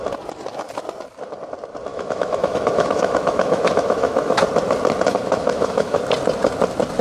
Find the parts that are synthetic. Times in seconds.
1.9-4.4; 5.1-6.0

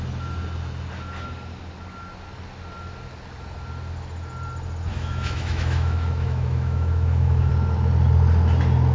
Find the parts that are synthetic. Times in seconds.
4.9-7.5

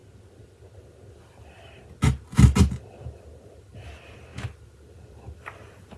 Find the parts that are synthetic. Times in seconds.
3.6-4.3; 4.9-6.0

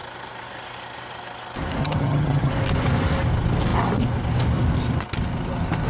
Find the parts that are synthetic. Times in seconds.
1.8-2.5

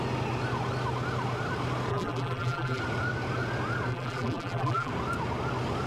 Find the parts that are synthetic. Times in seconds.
1.9-2.8; 3.9-4.9